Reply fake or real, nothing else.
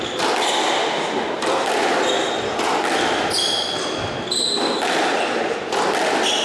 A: real